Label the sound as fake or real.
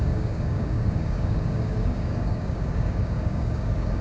fake